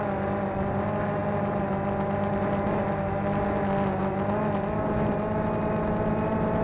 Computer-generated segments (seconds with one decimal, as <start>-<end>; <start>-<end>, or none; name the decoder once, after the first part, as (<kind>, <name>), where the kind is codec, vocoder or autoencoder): none